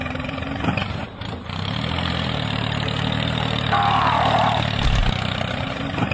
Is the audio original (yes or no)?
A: no